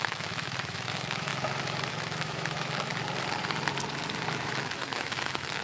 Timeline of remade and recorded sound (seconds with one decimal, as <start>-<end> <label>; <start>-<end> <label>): 0.0-1.3 remade; 1.3-1.9 recorded; 1.9-2.9 remade; 2.9-4.3 recorded; 4.3-5.6 remade